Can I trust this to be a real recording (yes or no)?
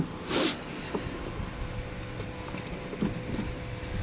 yes